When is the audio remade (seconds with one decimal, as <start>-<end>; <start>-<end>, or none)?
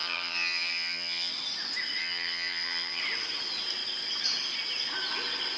0.0-1.3; 2.0-3.0